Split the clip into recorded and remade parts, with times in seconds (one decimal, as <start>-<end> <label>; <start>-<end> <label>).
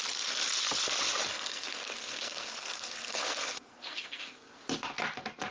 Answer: 0.0-1.3 recorded; 1.3-4.6 remade; 4.6-5.5 recorded